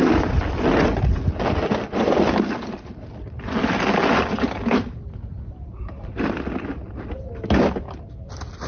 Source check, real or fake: real